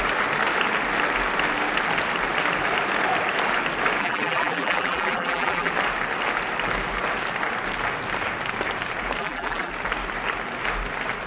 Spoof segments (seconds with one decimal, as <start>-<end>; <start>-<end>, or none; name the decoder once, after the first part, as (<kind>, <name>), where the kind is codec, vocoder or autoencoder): 4.0-5.7 (vocoder, BigVGAN v2); 9.2-9.7